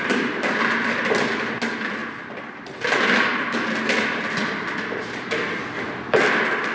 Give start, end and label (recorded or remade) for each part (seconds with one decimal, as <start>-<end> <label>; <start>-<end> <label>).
0.0-6.7 recorded